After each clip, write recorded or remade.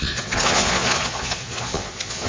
remade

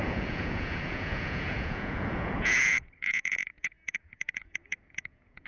remade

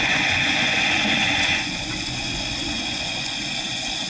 remade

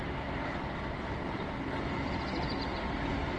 recorded